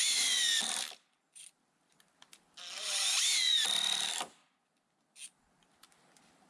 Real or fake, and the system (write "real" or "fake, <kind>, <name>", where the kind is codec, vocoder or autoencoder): real